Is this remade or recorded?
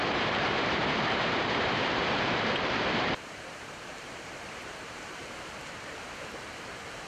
remade